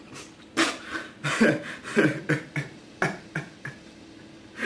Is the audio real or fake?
real